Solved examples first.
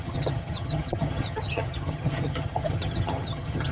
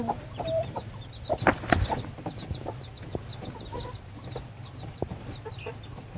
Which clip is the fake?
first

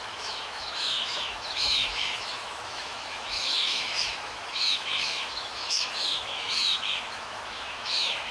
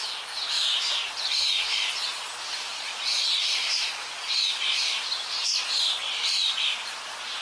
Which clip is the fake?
first